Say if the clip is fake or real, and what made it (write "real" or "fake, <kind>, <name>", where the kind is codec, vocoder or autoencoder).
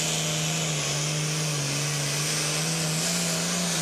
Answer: real